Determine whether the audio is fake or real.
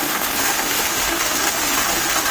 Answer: fake